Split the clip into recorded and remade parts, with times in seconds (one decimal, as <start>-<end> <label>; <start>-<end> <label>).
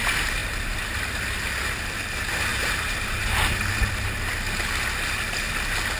0.0-2.5 recorded; 2.5-3.5 remade; 3.5-6.0 recorded